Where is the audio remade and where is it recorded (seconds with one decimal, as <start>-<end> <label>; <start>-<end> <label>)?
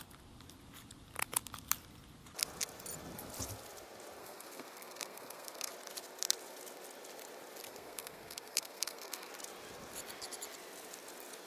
0.0-4.2 recorded; 4.2-5.7 remade; 5.7-7.7 recorded; 7.7-9.3 remade; 9.3-11.5 recorded